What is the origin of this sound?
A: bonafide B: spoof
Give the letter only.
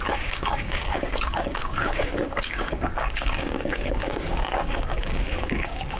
B